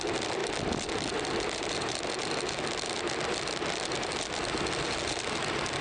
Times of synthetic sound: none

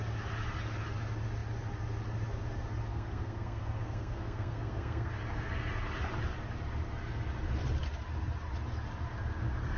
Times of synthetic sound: 2.9-5.1 (codec, SNAC)

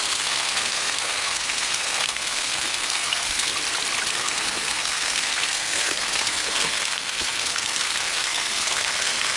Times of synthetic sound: 0.0-3.5 (codec, SNAC); 4.1-9.4

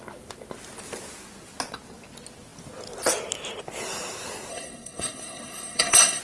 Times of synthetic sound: 4.5-6.2 (codec, SNAC)

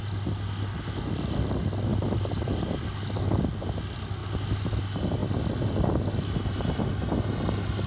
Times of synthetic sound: none

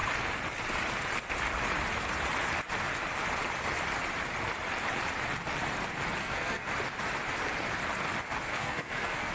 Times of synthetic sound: 6.2-6.7 (codec, SNAC); 8.5-9.3